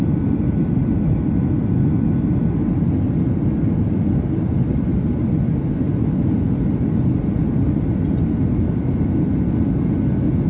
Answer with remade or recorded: recorded